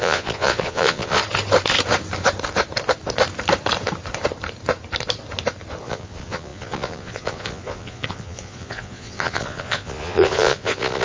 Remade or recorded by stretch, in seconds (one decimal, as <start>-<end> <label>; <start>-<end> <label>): 0.0-1.2 remade; 1.2-5.8 recorded; 5.8-11.0 remade